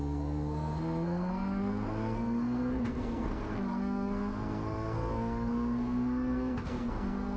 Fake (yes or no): yes